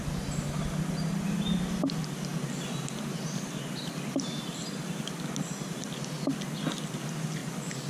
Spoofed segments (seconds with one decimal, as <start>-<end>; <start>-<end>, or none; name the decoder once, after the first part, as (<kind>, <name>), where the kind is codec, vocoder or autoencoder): none